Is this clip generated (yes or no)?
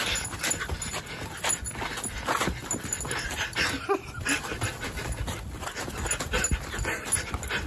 no